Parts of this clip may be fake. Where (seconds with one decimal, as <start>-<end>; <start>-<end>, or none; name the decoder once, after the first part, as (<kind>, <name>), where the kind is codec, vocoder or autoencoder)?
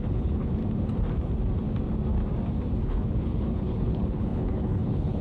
0.0-0.6 (codec, HILCodec); 2.8-5.2